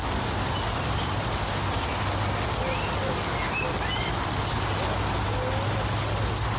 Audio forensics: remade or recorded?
recorded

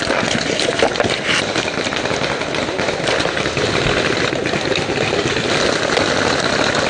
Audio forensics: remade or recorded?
recorded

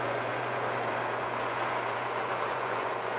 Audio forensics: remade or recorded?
remade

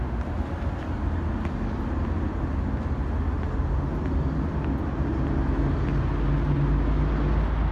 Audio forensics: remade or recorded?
recorded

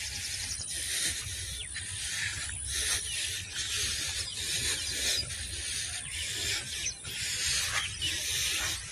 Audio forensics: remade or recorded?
recorded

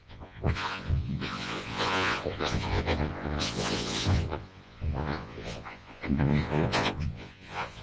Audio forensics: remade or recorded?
remade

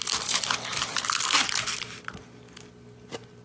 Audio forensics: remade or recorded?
recorded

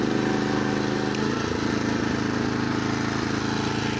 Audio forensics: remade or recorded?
recorded